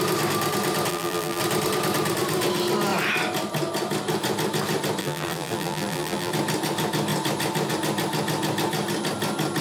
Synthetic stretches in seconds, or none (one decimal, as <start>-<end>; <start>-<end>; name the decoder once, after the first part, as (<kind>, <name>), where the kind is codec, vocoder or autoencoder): 0.9-1.4 (vocoder, BigVGAN v2); 5.0-6.3